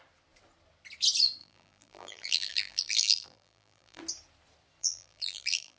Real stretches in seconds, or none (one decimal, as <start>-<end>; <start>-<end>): 0.0-1.4; 4.0-4.8

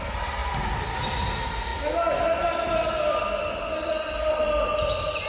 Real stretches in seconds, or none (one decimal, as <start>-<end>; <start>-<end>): 0.0-5.3

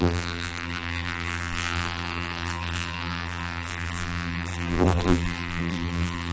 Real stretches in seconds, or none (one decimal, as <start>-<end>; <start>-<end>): none

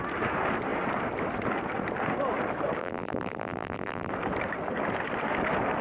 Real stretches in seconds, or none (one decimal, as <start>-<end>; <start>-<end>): 0.0-2.8; 4.1-5.8

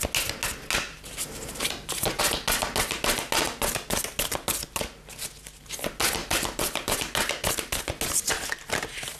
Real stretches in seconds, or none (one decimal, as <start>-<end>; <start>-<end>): 0.0-0.9; 2.2-6.2; 6.9-9.2